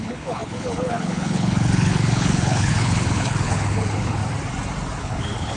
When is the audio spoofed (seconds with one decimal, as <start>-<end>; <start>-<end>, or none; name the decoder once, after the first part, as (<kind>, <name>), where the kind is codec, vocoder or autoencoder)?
0.0-4.2 (codec, HILCodec); 5.0-5.6